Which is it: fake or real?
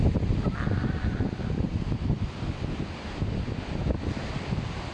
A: real